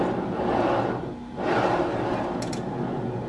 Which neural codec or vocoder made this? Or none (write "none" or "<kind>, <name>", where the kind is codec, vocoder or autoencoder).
none